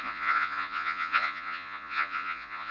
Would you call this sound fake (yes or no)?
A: yes